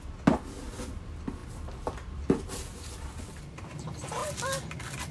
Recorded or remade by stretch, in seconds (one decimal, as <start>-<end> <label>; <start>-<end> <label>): 0.0-5.1 recorded